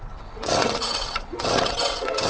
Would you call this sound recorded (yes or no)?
no